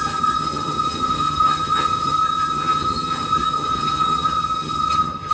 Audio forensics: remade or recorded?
remade